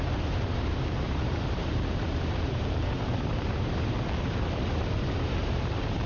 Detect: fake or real fake